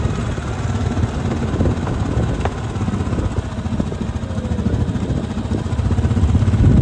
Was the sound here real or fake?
real